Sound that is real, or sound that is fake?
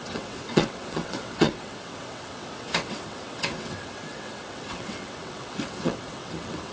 fake